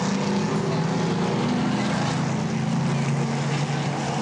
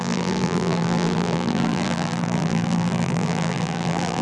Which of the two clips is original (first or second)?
first